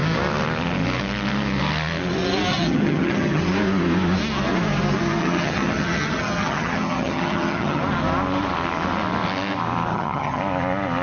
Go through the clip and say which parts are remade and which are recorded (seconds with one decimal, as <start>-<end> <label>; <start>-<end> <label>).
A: 0.0-2.5 recorded; 2.5-3.4 remade; 3.4-5.2 recorded; 5.2-7.8 remade; 7.8-9.9 recorded; 9.9-10.4 remade; 10.4-11.0 recorded